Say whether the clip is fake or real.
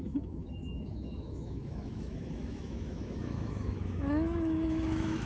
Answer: fake